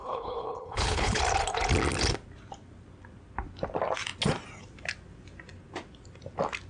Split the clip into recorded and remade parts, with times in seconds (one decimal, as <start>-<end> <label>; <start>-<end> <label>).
0.0-1.2 remade; 1.2-6.7 recorded